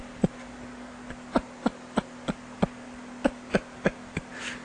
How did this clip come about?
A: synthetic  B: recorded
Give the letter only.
B